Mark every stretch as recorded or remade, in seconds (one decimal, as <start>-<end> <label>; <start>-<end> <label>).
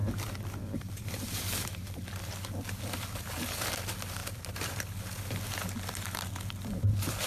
0.0-2.8 remade; 2.8-4.2 recorded; 4.2-5.0 remade; 5.0-7.3 recorded